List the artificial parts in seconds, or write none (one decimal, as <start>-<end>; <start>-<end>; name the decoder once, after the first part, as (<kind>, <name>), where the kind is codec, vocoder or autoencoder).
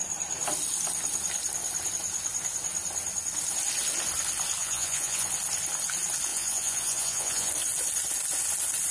4.6-5.3 (vocoder, Vocos); 6.3-7.5